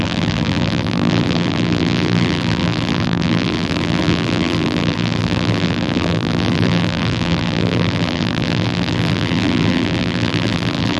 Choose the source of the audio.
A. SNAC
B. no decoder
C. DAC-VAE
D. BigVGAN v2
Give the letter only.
D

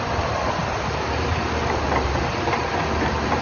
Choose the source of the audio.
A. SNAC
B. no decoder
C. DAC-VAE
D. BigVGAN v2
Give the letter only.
D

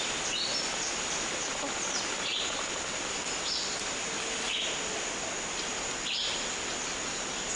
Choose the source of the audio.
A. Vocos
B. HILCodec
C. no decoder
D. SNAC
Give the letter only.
C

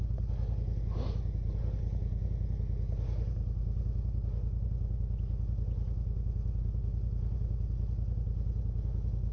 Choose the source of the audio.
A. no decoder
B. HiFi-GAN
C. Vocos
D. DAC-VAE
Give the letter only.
A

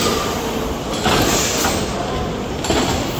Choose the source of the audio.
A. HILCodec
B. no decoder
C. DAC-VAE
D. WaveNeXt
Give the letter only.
B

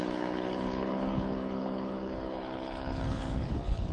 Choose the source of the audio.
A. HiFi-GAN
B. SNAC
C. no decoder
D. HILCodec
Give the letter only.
D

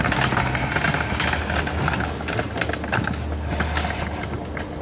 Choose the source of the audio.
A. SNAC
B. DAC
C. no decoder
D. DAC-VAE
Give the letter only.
C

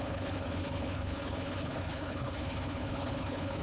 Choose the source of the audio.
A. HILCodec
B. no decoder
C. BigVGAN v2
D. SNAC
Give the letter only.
A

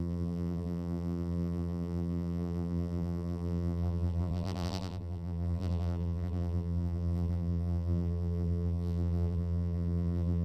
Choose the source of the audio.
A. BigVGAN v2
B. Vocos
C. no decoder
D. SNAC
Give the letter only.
A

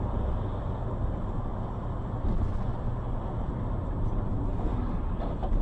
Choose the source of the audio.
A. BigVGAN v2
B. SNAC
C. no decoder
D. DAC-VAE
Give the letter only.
C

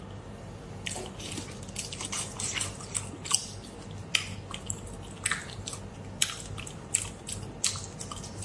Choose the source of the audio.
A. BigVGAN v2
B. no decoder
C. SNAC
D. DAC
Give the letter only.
B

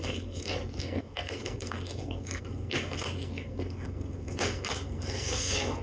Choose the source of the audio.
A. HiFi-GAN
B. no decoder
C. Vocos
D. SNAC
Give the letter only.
D